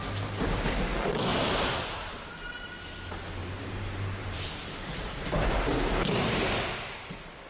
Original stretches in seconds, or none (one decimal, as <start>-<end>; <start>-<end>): 0.0-1.3; 2.3-3.4; 6.5-7.5